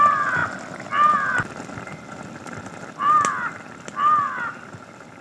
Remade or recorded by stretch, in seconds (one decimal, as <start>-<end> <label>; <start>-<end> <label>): 0.0-5.2 recorded